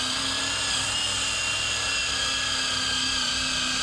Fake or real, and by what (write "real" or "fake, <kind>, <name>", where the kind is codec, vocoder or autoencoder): real